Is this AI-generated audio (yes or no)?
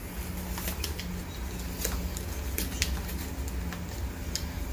no